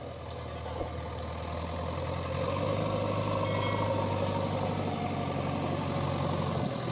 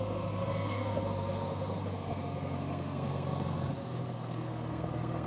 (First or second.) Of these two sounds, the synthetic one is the second